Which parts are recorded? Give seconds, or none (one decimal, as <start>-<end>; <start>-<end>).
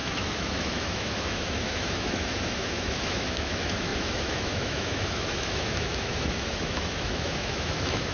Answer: none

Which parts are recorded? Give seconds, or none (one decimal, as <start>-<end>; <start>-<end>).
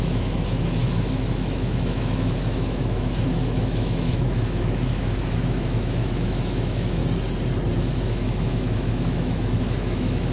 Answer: 7.0-7.8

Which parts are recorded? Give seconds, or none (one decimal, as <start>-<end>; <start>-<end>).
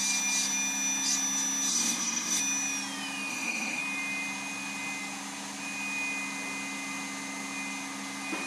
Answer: 0.0-1.7; 2.4-3.3; 3.8-8.5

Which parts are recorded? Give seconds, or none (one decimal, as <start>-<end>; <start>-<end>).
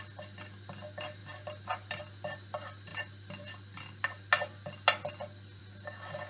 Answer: 0.0-6.3